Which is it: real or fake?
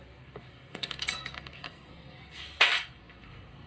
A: fake